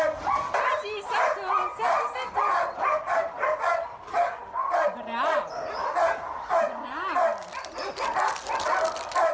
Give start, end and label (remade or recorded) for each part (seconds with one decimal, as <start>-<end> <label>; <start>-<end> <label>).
0.0-9.3 recorded